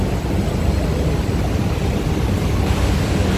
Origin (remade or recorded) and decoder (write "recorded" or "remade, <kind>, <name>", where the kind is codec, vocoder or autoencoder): recorded